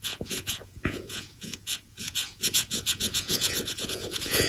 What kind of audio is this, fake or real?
fake